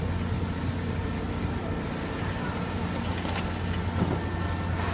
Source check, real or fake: real